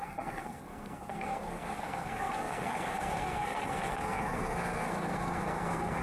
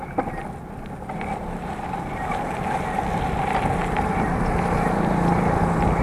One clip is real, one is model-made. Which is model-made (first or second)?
first